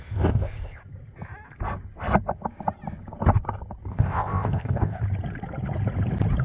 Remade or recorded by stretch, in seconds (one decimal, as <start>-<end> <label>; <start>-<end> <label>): 0.0-0.8 remade; 0.8-3.9 recorded; 3.9-5.0 remade; 5.0-6.4 recorded